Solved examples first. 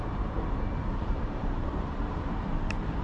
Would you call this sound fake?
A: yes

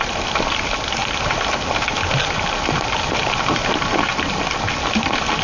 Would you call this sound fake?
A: no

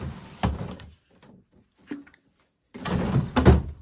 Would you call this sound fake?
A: yes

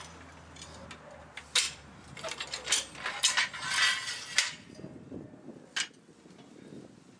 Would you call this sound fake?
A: no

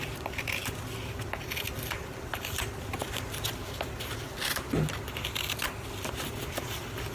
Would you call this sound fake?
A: no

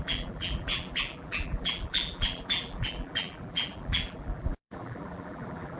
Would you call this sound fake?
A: yes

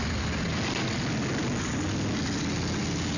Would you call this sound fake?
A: no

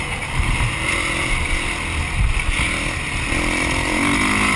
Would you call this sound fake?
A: no